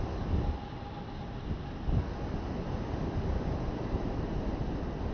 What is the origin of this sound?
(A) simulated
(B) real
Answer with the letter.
B